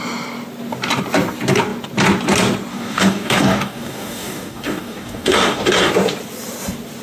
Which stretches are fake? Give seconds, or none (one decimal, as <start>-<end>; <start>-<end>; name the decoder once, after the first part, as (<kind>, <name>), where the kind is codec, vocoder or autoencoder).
2.7-5.9 (codec, DAC)

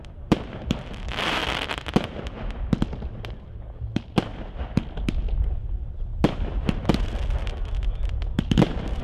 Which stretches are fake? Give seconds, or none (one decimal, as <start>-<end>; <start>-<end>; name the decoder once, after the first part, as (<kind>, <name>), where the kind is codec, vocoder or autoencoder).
0.0-1.4 (vocoder, BigVGAN v2); 3.6-9.0